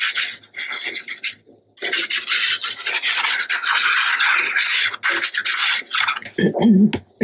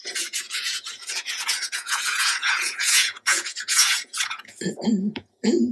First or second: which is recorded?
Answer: first